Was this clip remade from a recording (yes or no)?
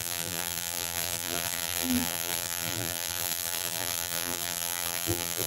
yes